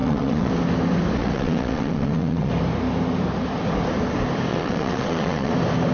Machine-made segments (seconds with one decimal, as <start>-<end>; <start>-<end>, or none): 0.0-0.5; 1.2-2.5; 4.5-5.5